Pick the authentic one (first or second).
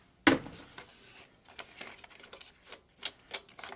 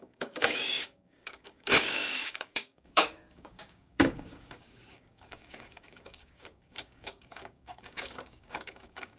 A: first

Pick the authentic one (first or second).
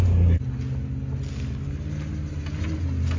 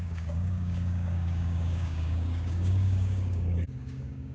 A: first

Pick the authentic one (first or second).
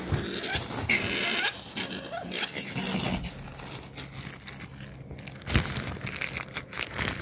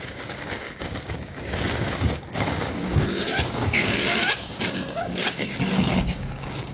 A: first